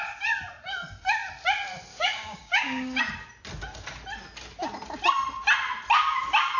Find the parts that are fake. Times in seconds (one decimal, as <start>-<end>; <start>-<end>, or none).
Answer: 1.9-3.0